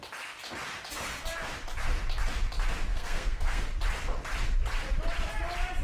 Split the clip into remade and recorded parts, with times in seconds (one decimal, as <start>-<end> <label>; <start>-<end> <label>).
0.0-2.9 recorded; 2.9-3.6 remade; 3.6-5.8 recorded